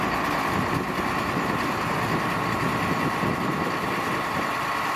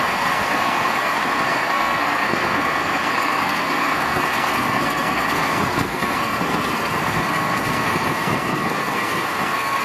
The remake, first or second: second